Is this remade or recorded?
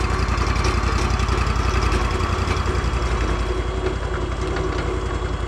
recorded